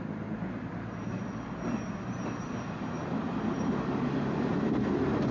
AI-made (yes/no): no